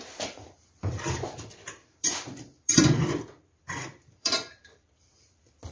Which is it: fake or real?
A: fake